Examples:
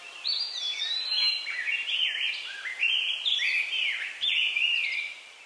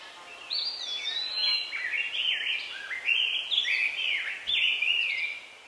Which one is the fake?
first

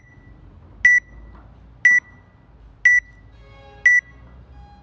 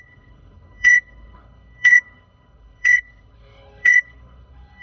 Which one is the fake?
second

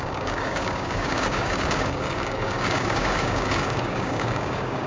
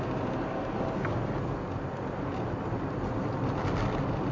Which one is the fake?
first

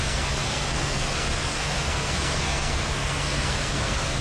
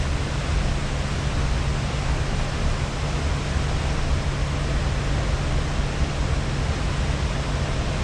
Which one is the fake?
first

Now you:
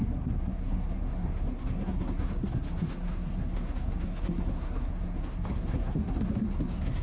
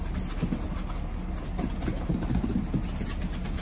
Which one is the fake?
first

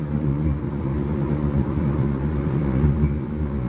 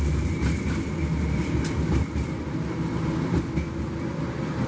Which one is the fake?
first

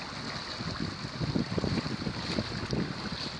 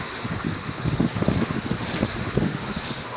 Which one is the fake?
second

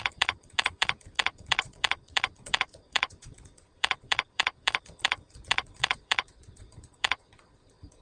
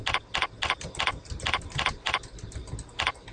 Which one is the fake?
first